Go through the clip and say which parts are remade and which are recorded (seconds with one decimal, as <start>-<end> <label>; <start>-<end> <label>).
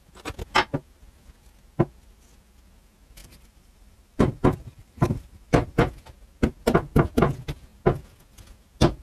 0.0-3.2 recorded; 3.2-5.9 remade; 5.9-9.0 recorded